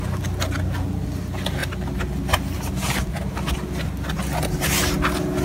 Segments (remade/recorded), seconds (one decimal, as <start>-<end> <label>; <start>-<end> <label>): 0.0-5.4 recorded